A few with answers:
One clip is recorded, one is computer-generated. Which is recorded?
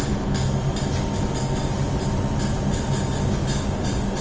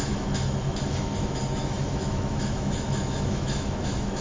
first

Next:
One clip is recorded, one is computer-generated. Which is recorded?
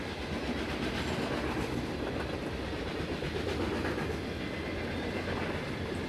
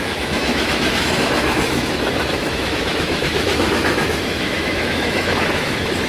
first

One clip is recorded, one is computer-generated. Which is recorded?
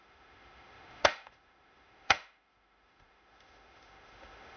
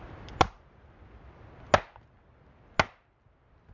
second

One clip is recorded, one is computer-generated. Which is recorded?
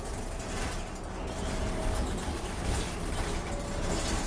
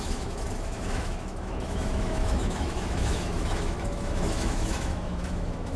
first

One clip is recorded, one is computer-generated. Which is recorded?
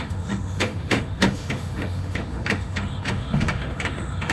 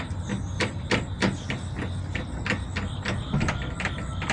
second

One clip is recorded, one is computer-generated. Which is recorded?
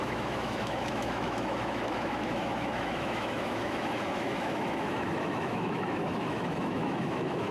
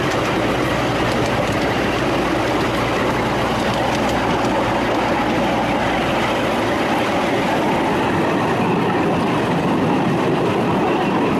second